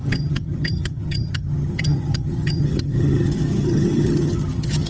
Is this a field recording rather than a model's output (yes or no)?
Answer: no